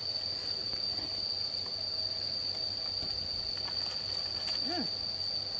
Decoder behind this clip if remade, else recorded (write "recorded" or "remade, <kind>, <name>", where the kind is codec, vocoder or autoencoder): recorded